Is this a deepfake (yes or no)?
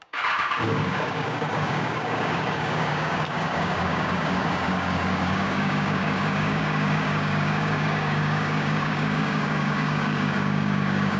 yes